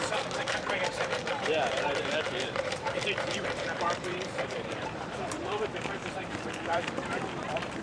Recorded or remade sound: remade